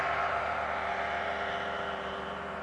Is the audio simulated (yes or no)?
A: yes